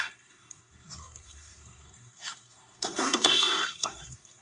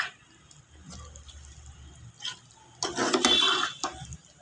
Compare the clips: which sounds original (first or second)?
second